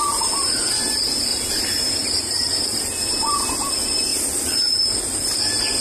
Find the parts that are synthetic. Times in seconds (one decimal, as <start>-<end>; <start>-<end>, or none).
1.3-2.8